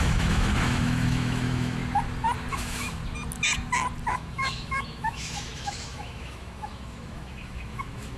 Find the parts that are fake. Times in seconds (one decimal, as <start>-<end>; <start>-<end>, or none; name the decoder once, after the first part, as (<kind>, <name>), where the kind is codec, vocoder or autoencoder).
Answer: 0.0-1.8 (autoencoder, DAC-VAE); 2.5-3.0; 4.1-8.2